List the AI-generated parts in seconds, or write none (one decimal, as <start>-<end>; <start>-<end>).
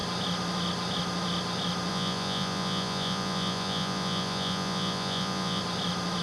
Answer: 1.9-5.6